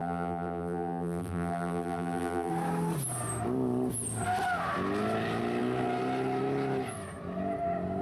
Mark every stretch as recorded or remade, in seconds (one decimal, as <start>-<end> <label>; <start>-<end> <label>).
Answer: 0.0-2.5 remade; 2.5-8.0 recorded